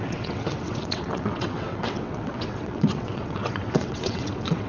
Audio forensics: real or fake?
fake